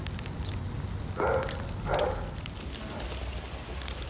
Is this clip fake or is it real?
real